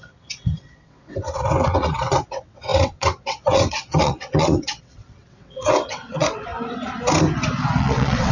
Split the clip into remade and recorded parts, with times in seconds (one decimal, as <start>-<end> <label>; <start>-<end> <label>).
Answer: 0.0-6.5 remade; 6.5-7.8 recorded; 7.8-8.3 remade